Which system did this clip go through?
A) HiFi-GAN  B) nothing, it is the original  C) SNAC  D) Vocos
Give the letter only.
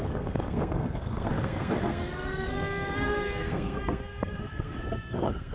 C